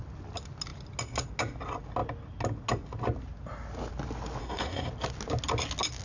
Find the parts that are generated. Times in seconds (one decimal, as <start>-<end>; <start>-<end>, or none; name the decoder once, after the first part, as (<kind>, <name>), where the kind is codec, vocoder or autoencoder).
4.4-4.9 (codec, SNAC)